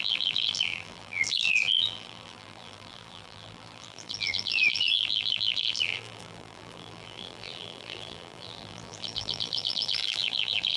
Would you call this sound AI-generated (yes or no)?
yes